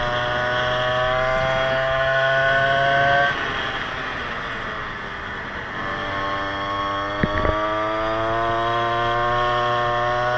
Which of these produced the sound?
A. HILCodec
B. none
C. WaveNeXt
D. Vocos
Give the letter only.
B